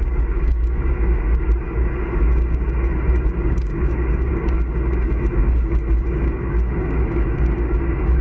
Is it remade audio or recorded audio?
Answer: remade